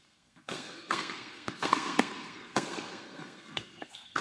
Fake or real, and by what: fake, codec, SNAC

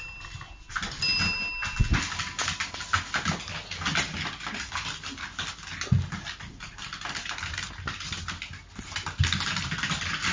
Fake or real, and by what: real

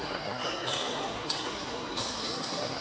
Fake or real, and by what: fake, codec, SNAC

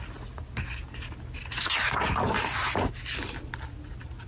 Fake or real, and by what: real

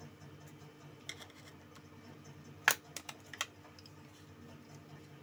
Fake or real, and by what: real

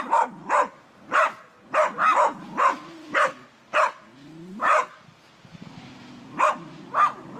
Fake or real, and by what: real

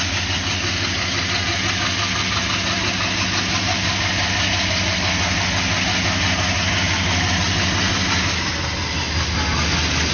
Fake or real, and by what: real